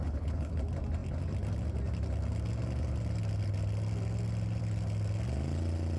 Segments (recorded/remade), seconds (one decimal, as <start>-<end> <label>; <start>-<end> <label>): 0.0-0.6 remade; 0.6-6.0 recorded